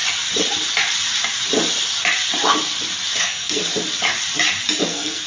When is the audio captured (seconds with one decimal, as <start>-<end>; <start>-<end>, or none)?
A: 0.0-3.2; 3.6-4.8